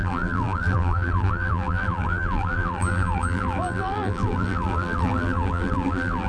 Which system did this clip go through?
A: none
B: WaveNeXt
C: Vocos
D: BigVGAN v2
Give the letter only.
D